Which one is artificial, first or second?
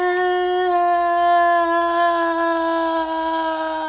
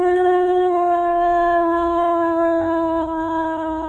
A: second